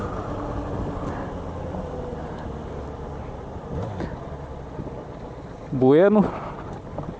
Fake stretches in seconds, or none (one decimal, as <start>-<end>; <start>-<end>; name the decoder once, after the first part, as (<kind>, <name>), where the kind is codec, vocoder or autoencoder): 2.1-2.8 (vocoder, BigVGAN v2)